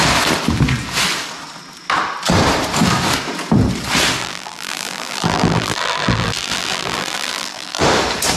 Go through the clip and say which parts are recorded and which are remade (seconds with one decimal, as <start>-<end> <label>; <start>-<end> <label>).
0.0-4.2 recorded; 4.2-7.8 remade; 7.8-8.4 recorded